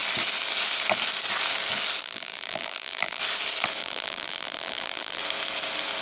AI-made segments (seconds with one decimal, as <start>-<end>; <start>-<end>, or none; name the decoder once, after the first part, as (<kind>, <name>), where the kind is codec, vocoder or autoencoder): 2.0-3.2 (vocoder, BigVGAN v2); 3.8-5.2